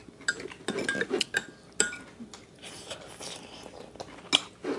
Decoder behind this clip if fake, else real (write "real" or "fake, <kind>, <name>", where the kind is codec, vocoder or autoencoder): real